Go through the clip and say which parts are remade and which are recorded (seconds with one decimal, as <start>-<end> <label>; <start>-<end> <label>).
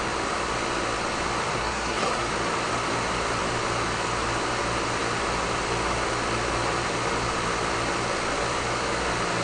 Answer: 0.0-1.5 recorded; 1.5-2.3 remade; 2.3-9.4 recorded